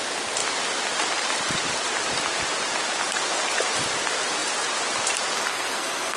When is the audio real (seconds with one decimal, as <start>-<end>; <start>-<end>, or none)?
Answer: 0.0-5.5